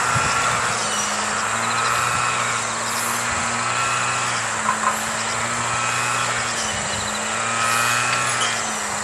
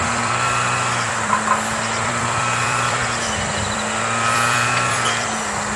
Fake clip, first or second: second